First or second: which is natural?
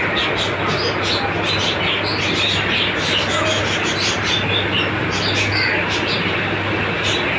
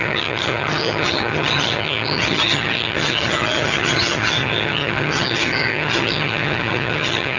first